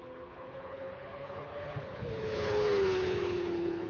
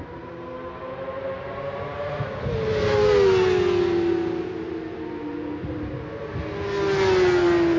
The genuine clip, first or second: second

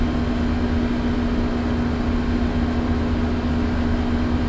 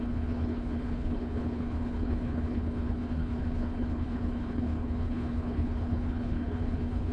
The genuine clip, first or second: first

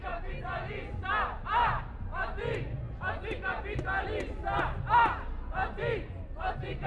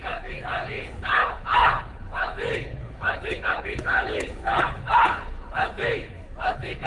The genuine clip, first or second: first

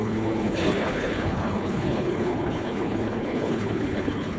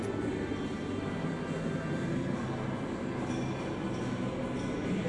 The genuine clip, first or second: second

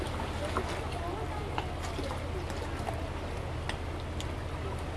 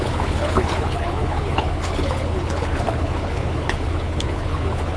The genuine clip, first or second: first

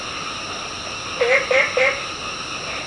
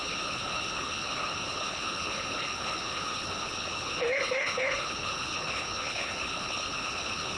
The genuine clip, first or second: first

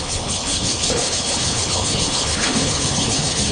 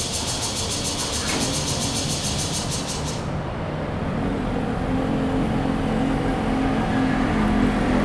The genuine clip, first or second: second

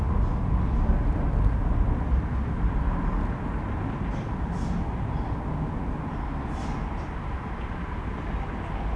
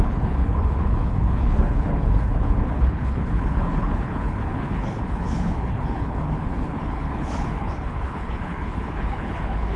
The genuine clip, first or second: first